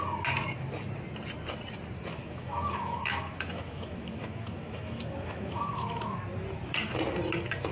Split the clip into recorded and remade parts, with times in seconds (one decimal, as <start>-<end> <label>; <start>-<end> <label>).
0.0-2.1 recorded; 2.1-6.2 remade; 6.2-7.7 recorded